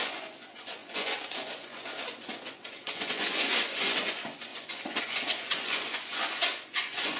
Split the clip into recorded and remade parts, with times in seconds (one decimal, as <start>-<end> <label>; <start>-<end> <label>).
0.0-7.2 remade